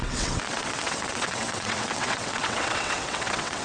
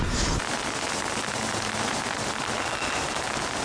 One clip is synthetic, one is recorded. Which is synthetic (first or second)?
first